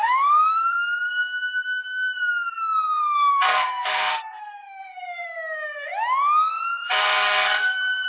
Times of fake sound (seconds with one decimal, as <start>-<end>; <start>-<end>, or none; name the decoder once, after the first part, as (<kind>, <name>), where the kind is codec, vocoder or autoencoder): 0.0-1.8 (codec, SNAC); 2.5-5.9; 7.0-8.1

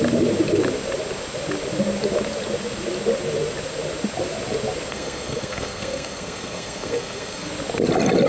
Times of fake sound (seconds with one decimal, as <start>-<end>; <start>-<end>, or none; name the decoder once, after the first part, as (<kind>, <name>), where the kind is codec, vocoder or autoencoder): 4.9-7.5 (codec, SNAC)

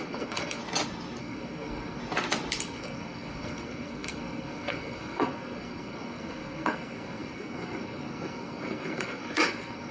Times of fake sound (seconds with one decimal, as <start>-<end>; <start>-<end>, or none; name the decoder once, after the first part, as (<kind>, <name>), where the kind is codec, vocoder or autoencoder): 0.0-0.6 (codec, SNAC); 1.2-2.0; 2.6-9.9

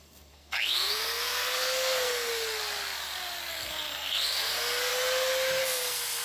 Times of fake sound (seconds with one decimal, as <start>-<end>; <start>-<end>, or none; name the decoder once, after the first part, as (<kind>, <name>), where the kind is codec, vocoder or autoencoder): 0.0-2.3 (codec, SNAC); 3.5-4.9; 5.6-6.2